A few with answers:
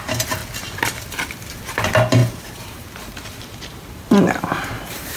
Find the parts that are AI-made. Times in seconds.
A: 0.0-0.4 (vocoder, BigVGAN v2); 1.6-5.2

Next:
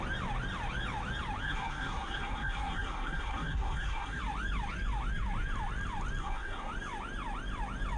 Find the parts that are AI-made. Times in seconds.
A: 1.4-4.2 (codec, SNAC); 6.2-6.7

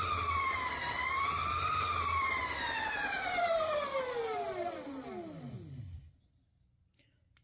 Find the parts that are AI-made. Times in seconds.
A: none

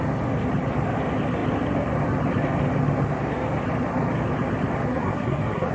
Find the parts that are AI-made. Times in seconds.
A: 4.9-5.7 (codec, SNAC)

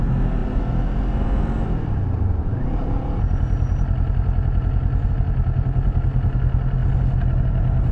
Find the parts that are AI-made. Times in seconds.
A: none

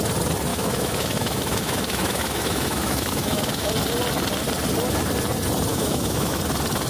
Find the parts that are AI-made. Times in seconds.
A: 0.5-3.7 (autoencoder, DAC-VAE); 5.7-6.4

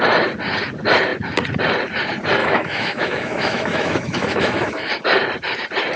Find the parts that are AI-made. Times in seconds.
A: 2.4-4.9 (autoencoder, DAC-VAE)